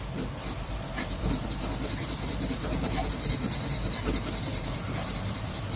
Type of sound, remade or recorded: recorded